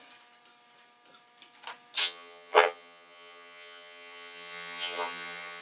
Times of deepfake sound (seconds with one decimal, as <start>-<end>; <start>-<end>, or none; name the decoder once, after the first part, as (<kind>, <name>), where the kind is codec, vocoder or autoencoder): 2.0-5.6 (vocoder, HiFi-GAN)